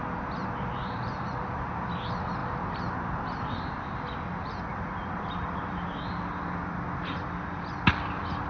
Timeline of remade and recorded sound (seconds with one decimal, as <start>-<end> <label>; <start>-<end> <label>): 0.0-8.5 recorded